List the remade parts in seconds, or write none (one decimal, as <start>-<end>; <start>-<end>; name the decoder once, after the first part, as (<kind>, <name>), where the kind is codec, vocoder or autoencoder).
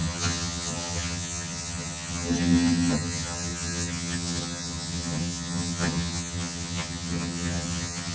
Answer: 0.0-8.1 (vocoder, HiFi-GAN)